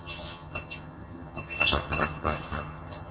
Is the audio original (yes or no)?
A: no